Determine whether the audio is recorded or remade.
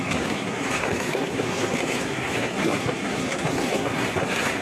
remade